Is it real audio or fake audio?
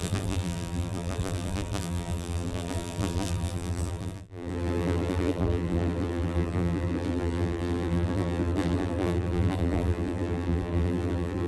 fake